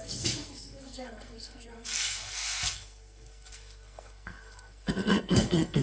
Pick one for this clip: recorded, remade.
remade